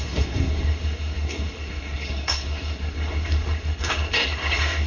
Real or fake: fake